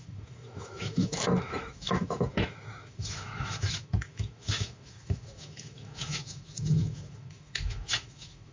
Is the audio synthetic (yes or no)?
yes